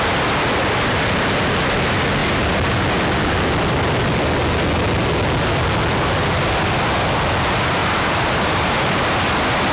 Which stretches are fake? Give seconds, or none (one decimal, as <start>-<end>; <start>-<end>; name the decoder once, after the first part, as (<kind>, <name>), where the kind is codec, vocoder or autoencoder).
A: 7.8-9.1 (vocoder, BigVGAN v2)